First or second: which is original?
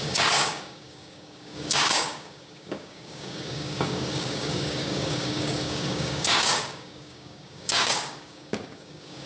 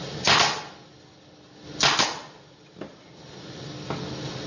second